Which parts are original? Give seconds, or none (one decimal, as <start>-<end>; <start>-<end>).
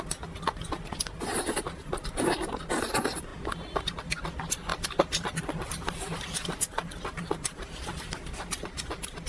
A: 0.0-9.3